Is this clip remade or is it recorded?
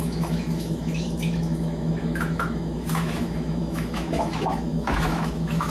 remade